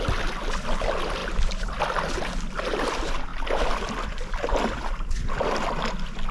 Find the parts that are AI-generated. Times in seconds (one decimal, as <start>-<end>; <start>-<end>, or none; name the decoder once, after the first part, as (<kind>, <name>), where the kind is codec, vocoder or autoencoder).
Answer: none